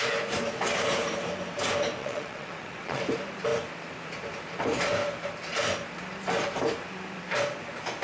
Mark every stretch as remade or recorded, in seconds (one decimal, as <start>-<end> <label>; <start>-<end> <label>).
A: 0.0-2.0 recorded; 2.0-3.0 remade; 3.0-8.0 recorded